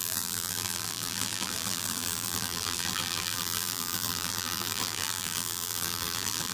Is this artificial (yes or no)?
yes